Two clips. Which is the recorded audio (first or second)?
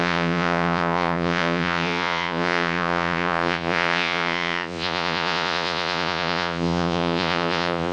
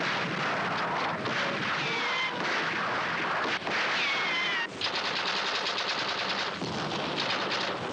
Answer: second